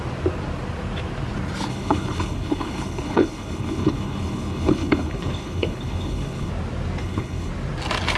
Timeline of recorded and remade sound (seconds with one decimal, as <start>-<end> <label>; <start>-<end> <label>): 0.0-1.7 recorded; 1.7-6.5 remade; 6.5-7.0 recorded; 7.0-7.5 remade; 7.5-8.2 recorded